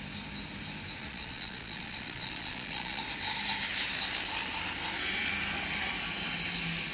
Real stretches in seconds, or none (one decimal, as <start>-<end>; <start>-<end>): 0.0-1.0; 3.0-6.9